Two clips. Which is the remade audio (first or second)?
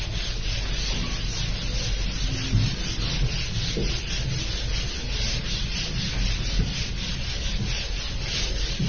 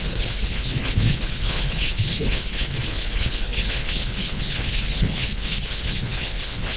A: second